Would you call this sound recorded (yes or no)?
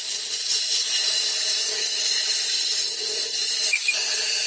yes